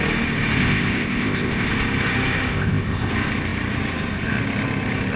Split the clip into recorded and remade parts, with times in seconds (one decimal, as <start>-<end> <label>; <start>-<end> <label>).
0.0-0.6 recorded; 0.6-1.7 remade; 1.7-2.5 recorded; 2.5-3.1 remade; 3.1-5.2 recorded